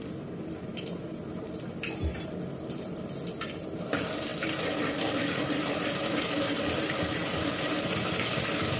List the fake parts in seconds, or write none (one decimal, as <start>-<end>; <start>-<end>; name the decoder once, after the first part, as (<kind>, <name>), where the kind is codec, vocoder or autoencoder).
none